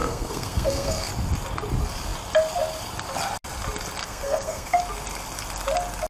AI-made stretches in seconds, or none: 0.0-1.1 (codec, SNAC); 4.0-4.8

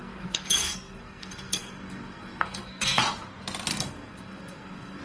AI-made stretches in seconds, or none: 0.0-3.0 (codec, SNAC); 3.7-5.0

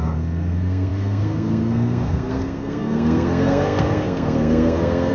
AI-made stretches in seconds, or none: 0.0-5.1 (codec, SNAC)

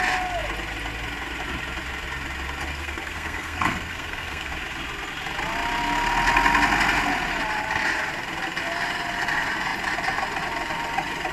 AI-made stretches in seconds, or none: 2.7-4.5 (codec, SNAC)

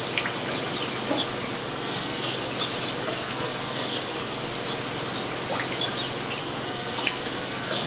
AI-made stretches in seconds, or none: 1.6-2.5 (codec, SNAC); 3.0-4.5; 6.4-7.9

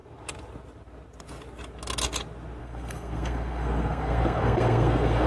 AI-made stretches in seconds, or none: 2.6-5.3 (codec, SNAC)